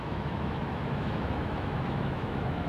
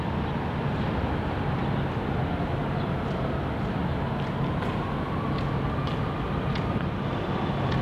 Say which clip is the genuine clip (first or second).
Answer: second